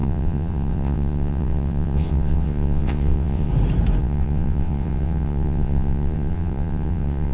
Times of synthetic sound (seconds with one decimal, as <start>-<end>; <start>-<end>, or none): 0.0-3.5; 4.0-7.3